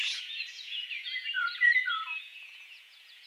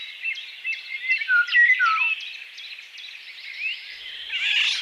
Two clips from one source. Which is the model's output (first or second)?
first